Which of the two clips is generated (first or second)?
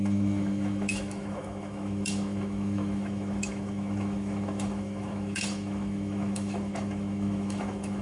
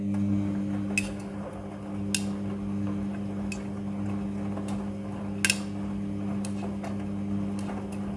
first